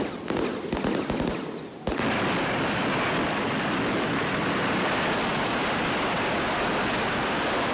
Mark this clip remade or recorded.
recorded